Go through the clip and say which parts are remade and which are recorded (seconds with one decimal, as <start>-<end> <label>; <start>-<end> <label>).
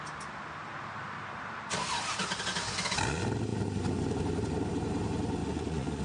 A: 0.0-5.4 recorded; 5.4-6.0 remade